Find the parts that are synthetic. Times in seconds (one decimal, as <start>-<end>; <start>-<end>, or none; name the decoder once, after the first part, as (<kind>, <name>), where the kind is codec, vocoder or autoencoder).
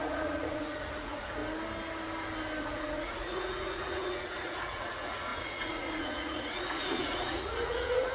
0.0-1.4 (vocoder, Vocos); 2.6-8.1